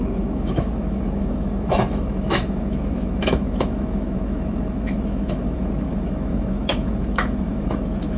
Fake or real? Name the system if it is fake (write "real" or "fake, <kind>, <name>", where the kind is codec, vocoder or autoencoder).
fake, autoencoder, DAC-VAE